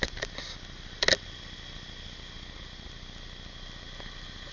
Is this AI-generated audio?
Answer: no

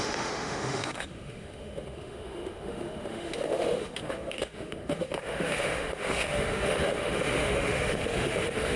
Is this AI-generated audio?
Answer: yes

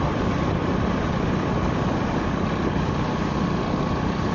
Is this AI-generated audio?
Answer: no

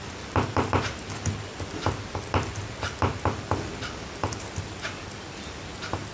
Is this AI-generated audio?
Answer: no